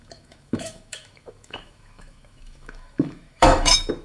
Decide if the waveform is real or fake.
fake